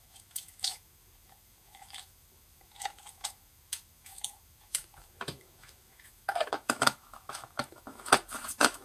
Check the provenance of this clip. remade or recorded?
remade